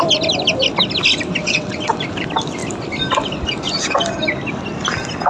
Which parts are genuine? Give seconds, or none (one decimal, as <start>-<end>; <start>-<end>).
0.0-1.4; 2.0-5.3